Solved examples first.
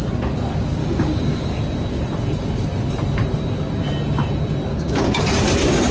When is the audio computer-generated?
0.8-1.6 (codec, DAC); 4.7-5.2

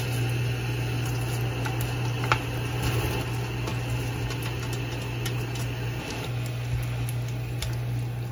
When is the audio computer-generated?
none